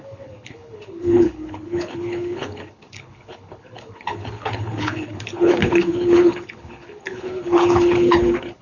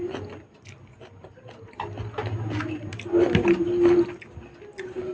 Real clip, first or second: second